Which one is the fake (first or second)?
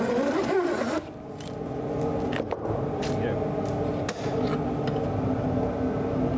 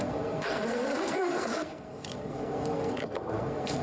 second